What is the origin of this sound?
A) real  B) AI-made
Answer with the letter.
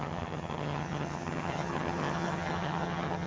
B